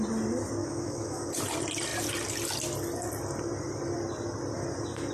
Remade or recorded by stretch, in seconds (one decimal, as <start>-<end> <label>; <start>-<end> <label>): 0.0-0.6 recorded; 0.6-1.3 remade; 1.3-5.1 recorded